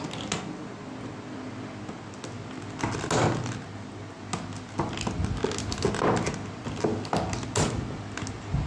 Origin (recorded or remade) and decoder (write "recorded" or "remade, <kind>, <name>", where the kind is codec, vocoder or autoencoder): recorded